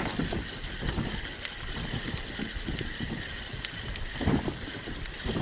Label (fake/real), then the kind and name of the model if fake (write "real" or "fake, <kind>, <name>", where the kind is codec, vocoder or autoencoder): real